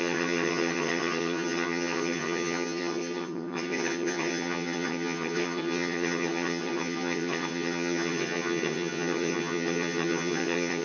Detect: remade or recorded remade